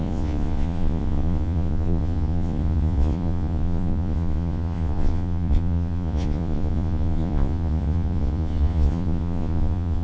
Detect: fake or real fake